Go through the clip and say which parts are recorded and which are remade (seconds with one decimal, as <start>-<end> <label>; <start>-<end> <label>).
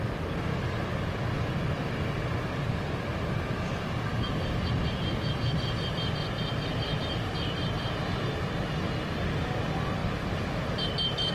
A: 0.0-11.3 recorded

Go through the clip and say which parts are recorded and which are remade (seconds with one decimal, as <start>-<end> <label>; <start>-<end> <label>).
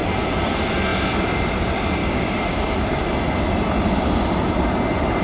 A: 0.0-2.0 recorded; 2.0-3.0 remade; 3.0-5.2 recorded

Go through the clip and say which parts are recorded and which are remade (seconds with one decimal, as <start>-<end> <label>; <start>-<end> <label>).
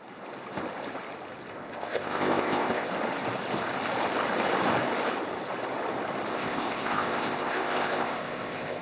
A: 0.0-1.5 recorded; 1.5-2.9 remade; 2.9-6.3 recorded; 6.3-8.8 remade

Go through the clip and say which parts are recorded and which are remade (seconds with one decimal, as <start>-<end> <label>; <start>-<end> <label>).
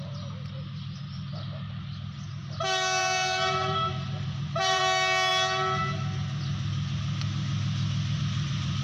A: 0.0-3.0 recorded; 3.0-4.8 remade; 4.8-8.8 recorded